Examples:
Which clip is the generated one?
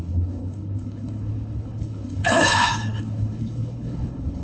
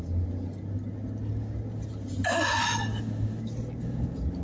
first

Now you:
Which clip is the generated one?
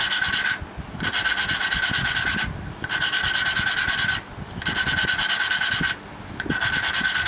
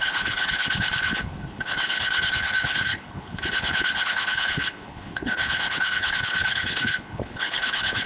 second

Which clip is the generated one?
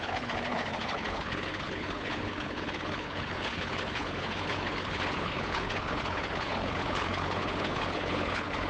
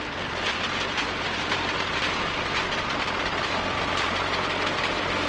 first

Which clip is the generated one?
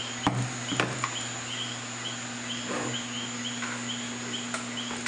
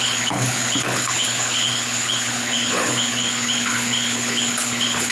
second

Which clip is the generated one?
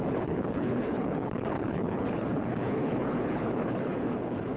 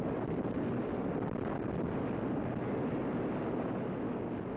first